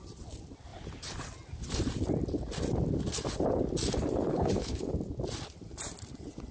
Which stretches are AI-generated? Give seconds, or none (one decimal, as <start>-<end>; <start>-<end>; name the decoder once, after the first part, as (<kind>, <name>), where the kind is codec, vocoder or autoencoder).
4.3-4.9 (codec, HILCodec)